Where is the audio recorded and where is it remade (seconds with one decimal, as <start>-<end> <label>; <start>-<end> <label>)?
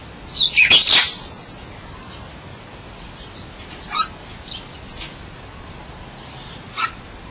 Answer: 0.0-7.3 recorded